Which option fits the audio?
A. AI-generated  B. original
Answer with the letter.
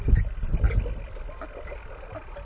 B